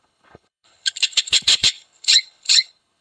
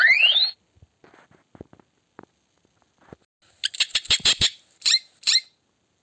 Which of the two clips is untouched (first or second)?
second